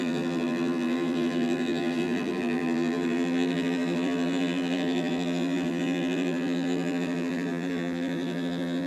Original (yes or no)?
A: no